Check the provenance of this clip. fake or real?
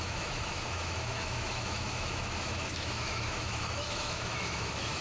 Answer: fake